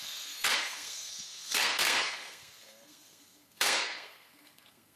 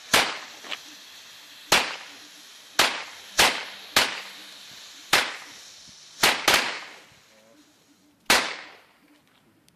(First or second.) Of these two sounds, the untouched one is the second